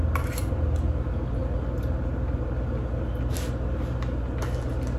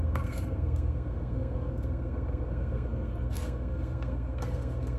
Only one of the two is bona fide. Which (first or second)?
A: first